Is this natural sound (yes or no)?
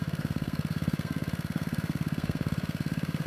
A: no